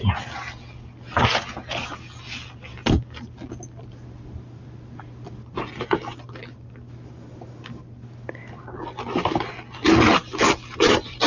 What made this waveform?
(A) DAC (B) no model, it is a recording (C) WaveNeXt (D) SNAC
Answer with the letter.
B